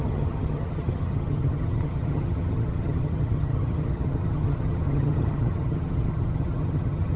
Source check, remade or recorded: remade